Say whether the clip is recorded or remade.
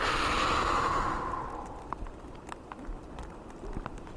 recorded